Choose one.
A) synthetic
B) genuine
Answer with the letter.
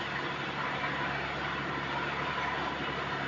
B